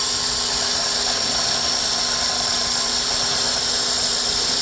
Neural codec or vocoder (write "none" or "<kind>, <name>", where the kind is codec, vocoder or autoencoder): none